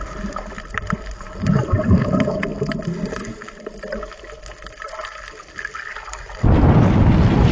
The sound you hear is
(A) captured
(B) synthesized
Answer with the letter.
A